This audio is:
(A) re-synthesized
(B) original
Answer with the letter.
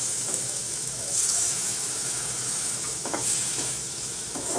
A